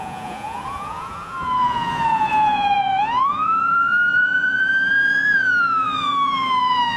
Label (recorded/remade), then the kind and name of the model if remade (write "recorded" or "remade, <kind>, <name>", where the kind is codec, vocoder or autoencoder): remade, vocoder, Vocos